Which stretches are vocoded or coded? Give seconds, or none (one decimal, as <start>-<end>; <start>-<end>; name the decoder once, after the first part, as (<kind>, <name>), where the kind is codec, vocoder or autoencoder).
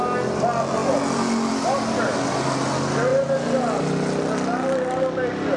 none